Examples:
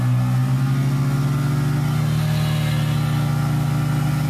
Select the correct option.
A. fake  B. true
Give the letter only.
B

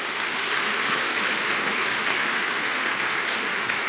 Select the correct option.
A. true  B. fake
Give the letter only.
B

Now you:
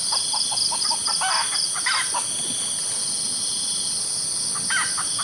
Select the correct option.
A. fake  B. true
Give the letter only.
B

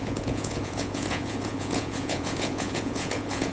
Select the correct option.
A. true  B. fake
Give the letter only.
B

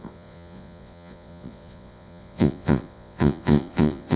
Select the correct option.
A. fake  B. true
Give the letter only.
A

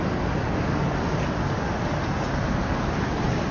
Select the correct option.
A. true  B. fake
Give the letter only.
A